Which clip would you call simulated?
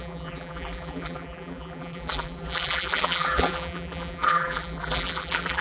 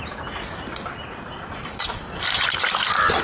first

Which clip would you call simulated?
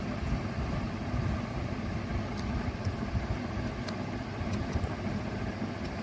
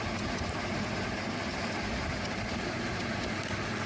first